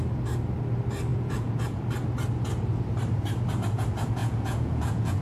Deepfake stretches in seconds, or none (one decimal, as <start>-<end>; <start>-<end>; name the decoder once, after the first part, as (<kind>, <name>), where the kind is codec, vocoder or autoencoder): 1.1-1.8 (vocoder, Vocos); 4.2-5.2